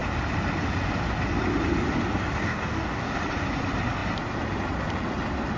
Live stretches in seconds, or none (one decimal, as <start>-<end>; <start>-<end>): 0.0-2.4; 3.1-5.6